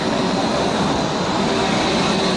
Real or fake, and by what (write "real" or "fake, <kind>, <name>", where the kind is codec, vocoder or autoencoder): real